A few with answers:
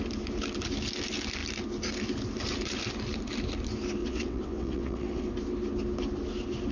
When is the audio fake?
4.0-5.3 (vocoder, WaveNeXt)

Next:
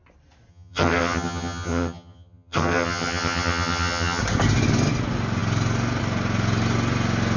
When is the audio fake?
0.5-4.2 (vocoder, HiFi-GAN)

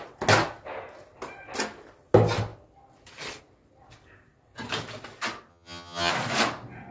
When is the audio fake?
5.5-6.1 (vocoder, HiFi-GAN)

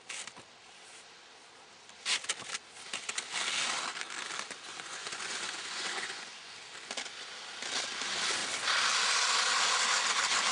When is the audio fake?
4.7-6.5 (vocoder, Vocos)

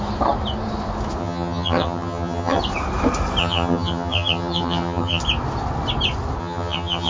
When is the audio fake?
1.2-2.6 (vocoder, HiFi-GAN); 3.4-5.2; 6.4-7.1

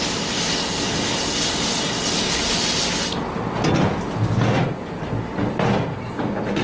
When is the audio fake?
none